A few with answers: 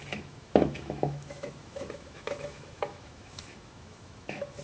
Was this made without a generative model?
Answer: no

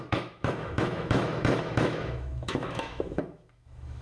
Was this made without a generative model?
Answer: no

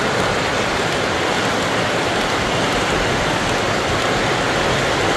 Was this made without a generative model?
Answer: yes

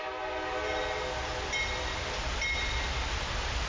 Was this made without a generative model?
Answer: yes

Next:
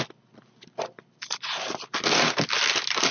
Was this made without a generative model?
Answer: yes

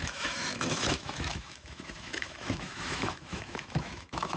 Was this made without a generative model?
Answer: no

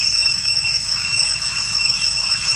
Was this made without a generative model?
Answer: no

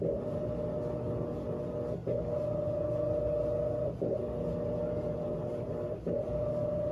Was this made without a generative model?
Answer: yes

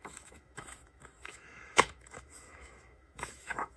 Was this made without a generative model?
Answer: no